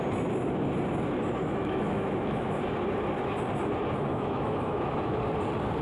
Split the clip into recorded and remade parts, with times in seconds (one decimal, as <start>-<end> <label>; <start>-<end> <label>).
0.0-1.4 recorded; 1.4-2.6 remade; 2.6-4.1 recorded; 4.1-5.2 remade; 5.2-5.8 recorded